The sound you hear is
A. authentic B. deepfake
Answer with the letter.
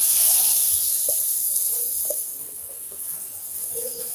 B